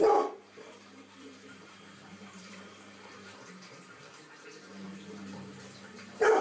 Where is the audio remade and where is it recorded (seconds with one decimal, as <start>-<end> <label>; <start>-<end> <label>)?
0.0-6.4 remade

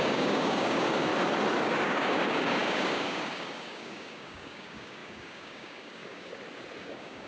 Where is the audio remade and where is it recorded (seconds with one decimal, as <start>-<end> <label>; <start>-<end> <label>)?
0.0-1.1 remade; 1.1-1.6 recorded; 1.6-6.3 remade; 6.3-6.8 recorded; 6.8-7.3 remade